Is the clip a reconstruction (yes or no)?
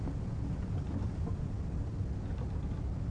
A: no